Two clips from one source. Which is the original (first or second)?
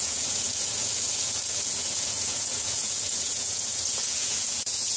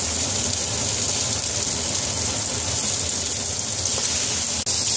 second